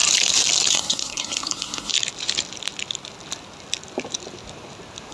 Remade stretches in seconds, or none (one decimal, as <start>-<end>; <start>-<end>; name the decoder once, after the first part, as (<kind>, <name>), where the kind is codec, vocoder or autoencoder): 0.7-1.9 (codec, SNAC)